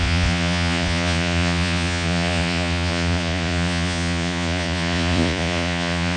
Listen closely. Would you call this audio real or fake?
fake